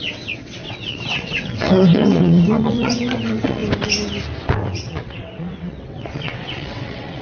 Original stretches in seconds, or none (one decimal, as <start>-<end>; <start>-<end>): 3.6-4.4